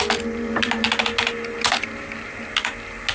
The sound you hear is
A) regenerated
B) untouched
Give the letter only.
B